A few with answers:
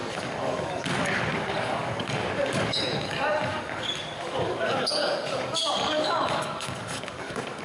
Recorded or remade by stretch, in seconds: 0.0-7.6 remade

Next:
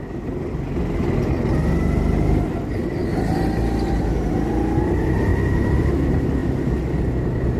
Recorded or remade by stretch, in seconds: 0.0-7.6 recorded

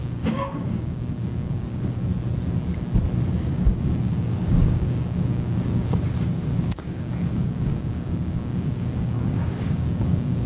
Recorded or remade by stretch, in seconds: 0.0-2.1 remade; 2.1-3.3 recorded; 3.3-10.5 remade

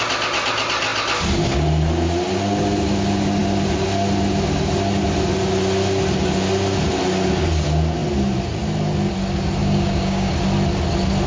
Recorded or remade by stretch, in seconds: 0.0-9.6 recorded; 9.6-10.3 remade; 10.3-11.3 recorded

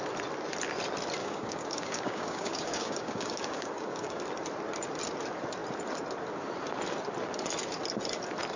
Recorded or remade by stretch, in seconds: 0.0-1.2 recorded; 1.2-4.2 remade; 4.2-8.6 recorded

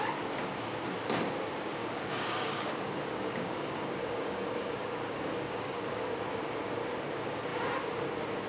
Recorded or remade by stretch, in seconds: 0.0-1.8 recorded; 1.8-6.1 remade; 6.1-8.5 recorded

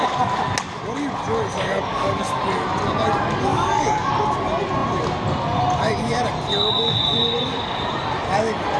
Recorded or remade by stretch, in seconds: 0.0-1.9 recorded; 1.9-2.4 remade; 2.4-3.5 recorded; 3.5-4.1 remade; 4.1-8.8 recorded